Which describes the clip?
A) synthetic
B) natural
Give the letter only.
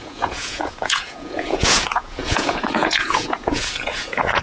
A